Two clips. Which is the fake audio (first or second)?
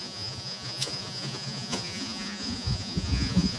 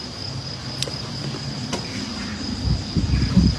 first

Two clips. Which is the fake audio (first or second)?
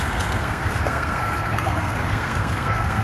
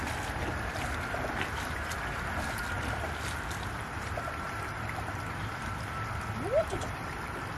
first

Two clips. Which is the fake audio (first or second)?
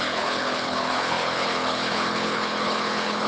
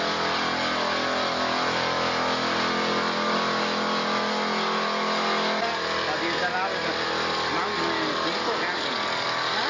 first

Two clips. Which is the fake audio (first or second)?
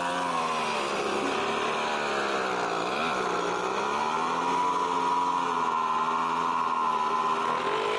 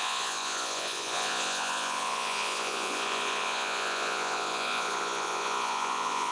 second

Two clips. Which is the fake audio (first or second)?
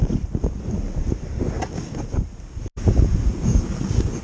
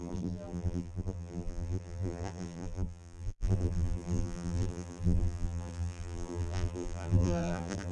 second